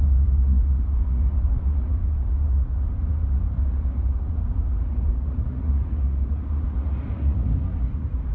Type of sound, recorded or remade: remade